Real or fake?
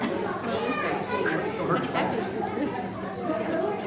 real